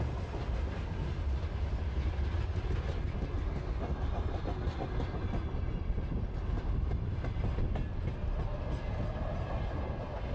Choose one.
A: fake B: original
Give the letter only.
B